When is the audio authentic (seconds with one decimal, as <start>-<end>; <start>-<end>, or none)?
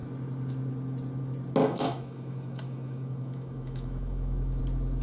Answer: 0.0-1.6; 4.6-5.0